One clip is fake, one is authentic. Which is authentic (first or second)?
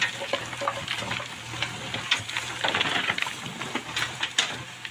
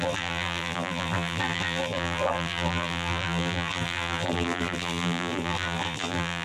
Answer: first